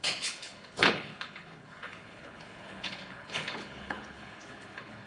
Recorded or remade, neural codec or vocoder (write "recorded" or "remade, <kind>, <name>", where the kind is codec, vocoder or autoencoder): remade, codec, HILCodec